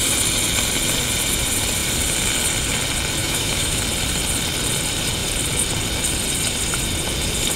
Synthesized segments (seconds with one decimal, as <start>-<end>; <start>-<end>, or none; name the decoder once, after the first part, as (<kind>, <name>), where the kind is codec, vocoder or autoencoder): 3.2-3.8 (autoencoder, DAC-VAE)